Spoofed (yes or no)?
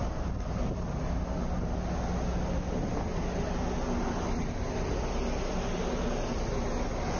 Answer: no